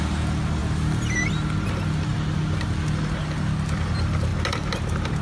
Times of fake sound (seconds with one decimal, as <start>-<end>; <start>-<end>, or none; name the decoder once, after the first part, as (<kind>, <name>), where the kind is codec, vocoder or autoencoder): none